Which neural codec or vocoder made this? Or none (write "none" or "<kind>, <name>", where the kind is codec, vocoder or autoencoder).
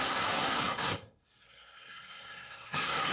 codec, SNAC